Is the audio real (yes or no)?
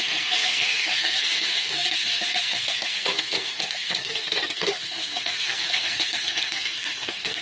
no